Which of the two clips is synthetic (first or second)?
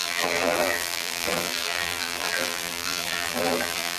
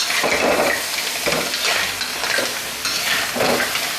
first